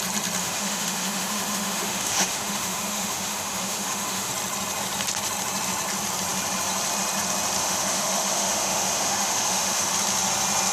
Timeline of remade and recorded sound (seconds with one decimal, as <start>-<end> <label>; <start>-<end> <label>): 0.0-0.4 recorded; 0.4-4.3 remade; 4.3-7.6 recorded; 7.6-9.9 remade; 9.9-10.7 recorded